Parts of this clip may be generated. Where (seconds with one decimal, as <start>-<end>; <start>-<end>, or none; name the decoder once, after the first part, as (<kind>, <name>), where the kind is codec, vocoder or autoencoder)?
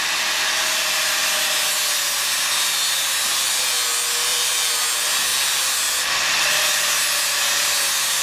4.3-4.8 (vocoder, BigVGAN v2)